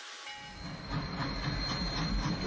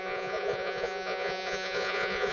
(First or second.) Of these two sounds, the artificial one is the second